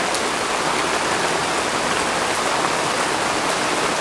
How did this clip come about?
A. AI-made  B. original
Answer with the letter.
B